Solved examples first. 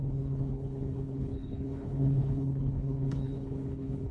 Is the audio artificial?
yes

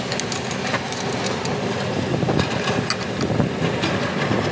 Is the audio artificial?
no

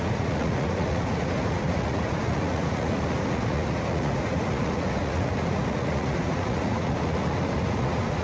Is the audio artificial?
yes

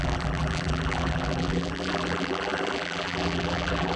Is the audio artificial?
yes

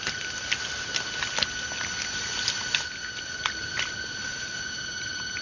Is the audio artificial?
no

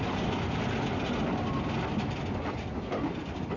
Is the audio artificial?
no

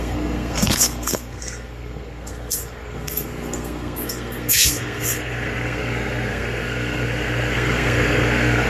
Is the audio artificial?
yes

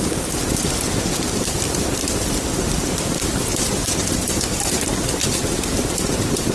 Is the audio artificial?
no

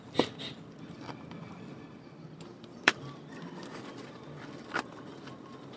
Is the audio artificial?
yes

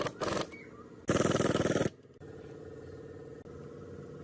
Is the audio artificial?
no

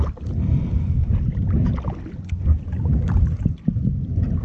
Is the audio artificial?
no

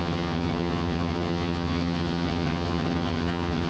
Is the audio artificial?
yes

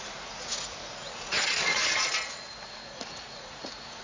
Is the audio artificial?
yes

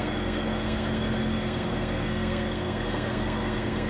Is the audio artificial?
yes